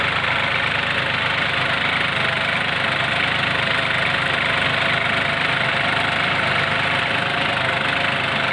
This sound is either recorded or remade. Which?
recorded